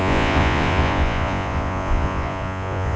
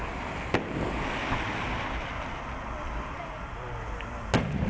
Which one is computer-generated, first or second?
first